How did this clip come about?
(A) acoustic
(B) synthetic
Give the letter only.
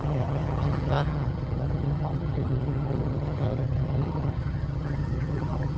B